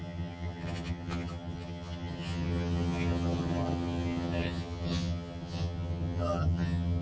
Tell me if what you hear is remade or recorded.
remade